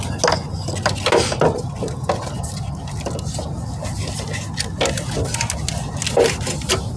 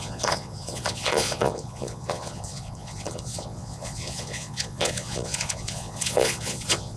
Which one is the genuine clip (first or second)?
first